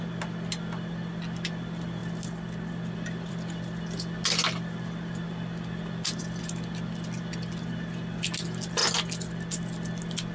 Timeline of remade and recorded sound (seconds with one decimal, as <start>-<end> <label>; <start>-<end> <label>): 0.0-10.3 recorded